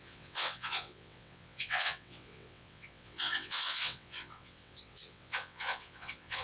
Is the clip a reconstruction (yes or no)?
yes